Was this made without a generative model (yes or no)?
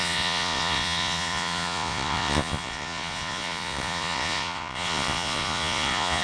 no